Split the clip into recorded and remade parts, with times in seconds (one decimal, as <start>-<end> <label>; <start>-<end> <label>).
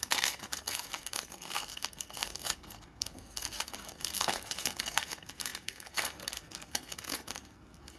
0.0-8.0 remade